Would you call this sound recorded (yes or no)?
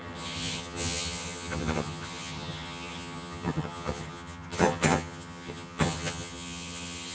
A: no